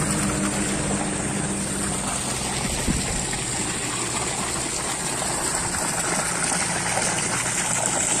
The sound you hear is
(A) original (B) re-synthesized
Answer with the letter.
A